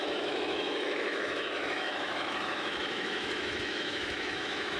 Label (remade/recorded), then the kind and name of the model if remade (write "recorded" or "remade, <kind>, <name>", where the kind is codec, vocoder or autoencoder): remade, autoencoder, DAC-VAE